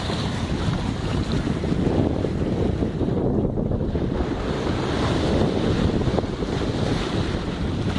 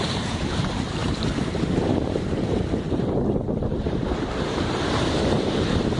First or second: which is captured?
first